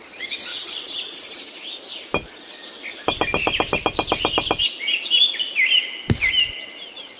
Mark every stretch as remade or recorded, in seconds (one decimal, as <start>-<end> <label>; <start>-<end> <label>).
0.0-0.5 recorded; 0.5-1.7 remade; 1.7-7.2 recorded